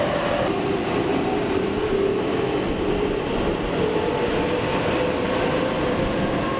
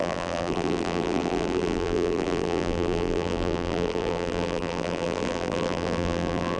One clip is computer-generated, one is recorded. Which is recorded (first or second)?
first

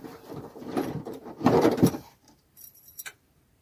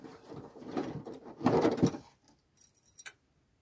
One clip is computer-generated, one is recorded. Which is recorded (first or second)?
second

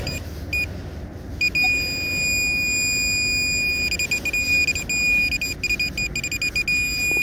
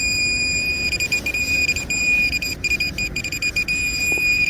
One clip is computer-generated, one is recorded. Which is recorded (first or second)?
first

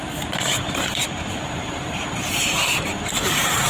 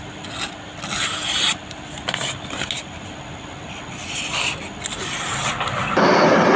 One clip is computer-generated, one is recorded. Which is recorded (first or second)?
second